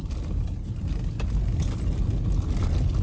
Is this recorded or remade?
recorded